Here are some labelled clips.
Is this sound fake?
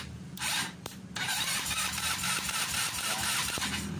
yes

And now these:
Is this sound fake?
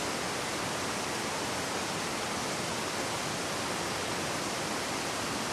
no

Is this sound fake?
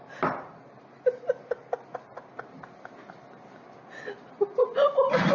no